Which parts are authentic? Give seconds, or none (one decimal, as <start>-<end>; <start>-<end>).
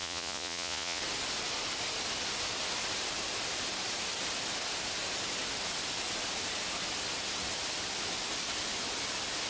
1.0-9.5